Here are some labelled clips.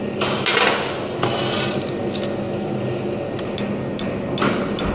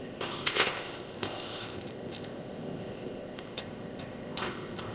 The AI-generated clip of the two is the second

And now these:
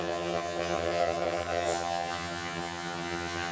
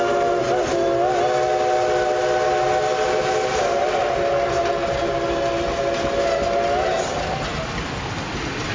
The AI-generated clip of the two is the first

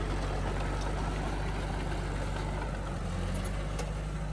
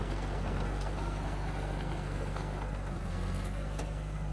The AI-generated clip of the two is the second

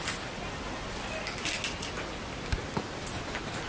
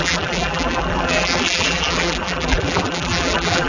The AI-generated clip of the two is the second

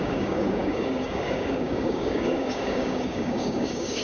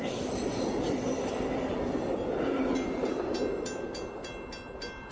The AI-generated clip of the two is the first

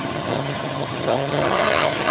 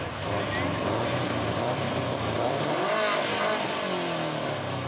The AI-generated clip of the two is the first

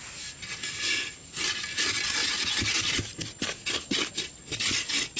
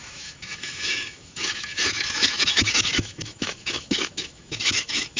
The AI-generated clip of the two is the second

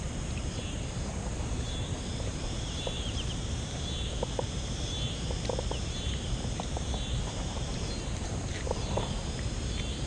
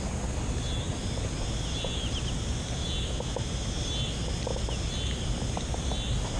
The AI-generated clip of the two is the first